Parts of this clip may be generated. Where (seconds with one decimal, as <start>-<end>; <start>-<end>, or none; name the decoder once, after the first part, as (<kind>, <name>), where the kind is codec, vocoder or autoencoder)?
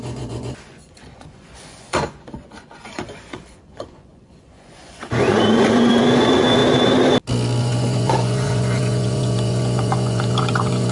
0.0-6.6 (vocoder, Vocos); 7.6-10.9